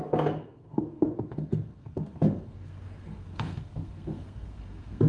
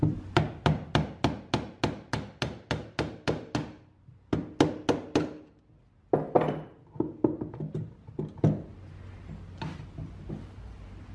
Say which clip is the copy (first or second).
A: first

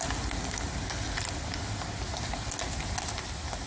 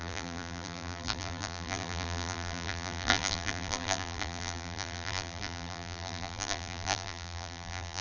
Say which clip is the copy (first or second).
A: second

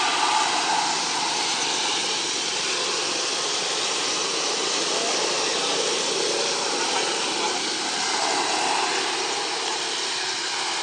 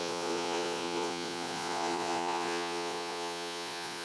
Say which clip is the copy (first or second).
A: second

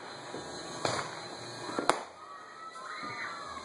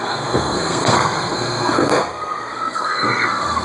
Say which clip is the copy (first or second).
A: second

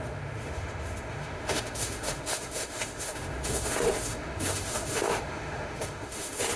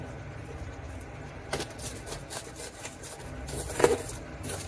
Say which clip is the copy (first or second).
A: first